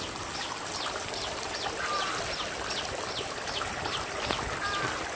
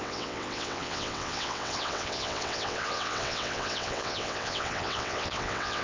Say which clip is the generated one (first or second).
second